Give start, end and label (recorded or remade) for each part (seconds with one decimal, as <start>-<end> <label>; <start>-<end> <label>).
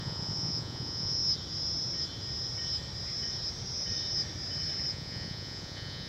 0.0-1.2 remade; 1.2-4.9 recorded; 4.9-6.1 remade